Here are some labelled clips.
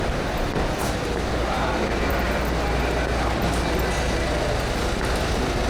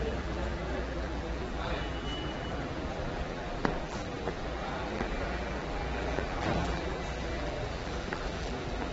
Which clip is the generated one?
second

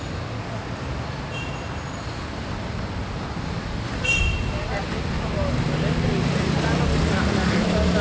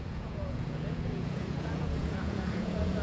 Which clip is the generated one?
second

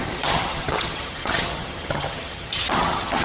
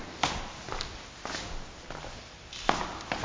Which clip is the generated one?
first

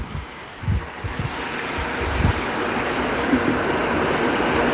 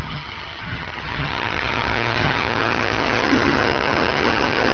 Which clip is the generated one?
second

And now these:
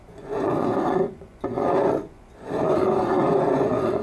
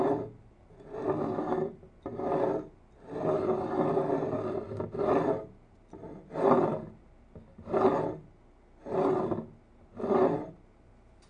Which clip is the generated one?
first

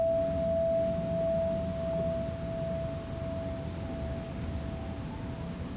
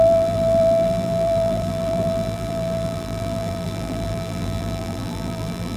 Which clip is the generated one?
second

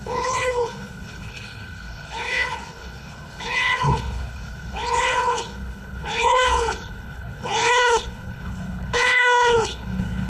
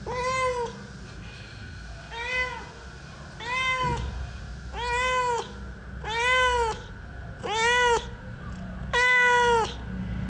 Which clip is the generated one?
first